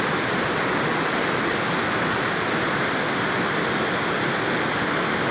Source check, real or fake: real